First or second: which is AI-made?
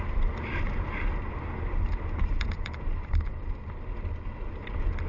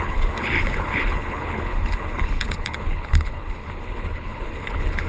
second